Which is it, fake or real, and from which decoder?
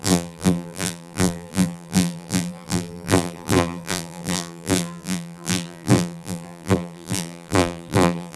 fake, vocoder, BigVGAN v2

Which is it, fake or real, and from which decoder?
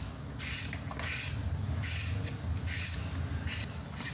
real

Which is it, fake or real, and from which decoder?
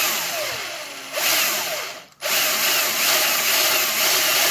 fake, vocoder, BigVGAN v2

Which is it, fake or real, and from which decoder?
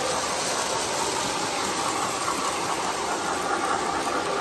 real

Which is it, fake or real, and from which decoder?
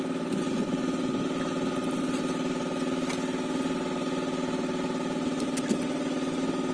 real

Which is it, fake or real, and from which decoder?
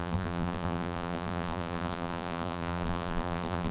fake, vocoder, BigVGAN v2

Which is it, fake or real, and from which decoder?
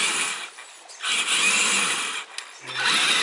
real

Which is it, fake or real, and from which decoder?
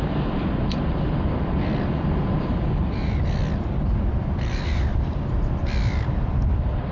fake, vocoder, BigVGAN v2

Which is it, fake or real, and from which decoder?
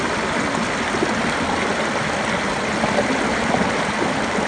real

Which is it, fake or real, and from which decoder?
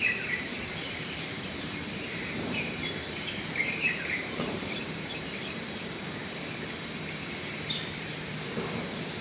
fake, vocoder, BigVGAN v2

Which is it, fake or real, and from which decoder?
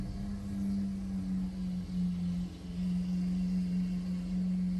real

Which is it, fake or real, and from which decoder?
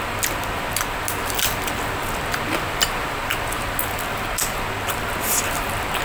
real